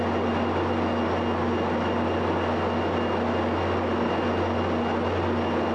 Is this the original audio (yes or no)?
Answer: yes